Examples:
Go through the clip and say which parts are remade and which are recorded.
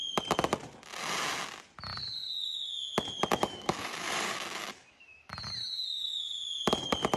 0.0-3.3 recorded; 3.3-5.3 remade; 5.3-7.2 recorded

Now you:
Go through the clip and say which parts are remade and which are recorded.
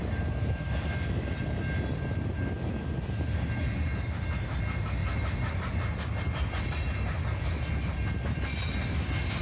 0.0-5.0 recorded; 5.0-6.8 remade; 6.8-9.4 recorded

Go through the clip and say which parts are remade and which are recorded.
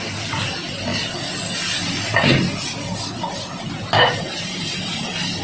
0.0-5.4 recorded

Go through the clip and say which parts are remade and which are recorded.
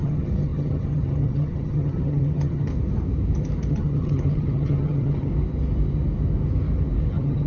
0.0-2.7 remade; 2.7-3.7 recorded; 3.7-5.3 remade; 5.3-7.1 recorded; 7.1-7.5 remade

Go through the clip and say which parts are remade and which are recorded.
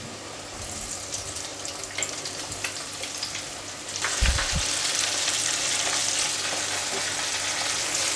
0.0-1.5 remade; 1.5-2.3 recorded; 2.3-6.0 remade; 6.0-6.6 recorded; 6.6-7.3 remade; 7.3-8.2 recorded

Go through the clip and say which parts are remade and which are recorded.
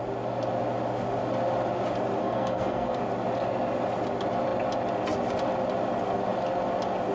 0.0-2.2 recorded; 2.2-3.0 remade; 3.0-7.1 recorded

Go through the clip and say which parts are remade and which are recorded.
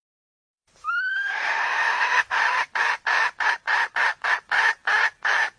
0.0-0.8 recorded; 0.8-2.4 remade; 2.4-5.6 recorded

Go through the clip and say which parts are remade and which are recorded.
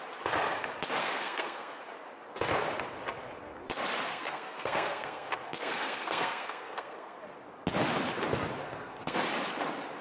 0.0-1.0 recorded; 1.0-1.8 remade; 1.8-4.1 recorded; 4.1-7.2 remade; 7.2-8.6 recorded; 8.6-9.2 remade; 9.2-10.0 recorded